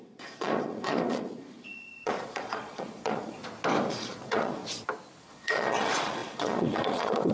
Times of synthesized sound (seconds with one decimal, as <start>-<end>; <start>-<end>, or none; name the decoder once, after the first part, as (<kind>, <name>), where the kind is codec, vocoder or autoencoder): 0.0-3.4 (vocoder, Vocos); 3.9-4.6; 5.2-7.3